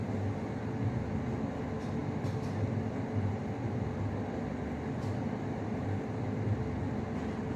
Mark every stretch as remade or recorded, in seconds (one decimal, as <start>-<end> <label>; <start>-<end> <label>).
0.0-2.0 recorded; 2.0-6.6 remade; 6.6-7.6 recorded